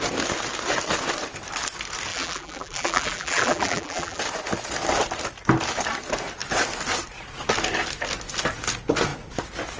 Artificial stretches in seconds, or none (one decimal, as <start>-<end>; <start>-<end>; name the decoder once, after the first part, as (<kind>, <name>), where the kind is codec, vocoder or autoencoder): 2.1-4.2 (vocoder, BigVGAN v2)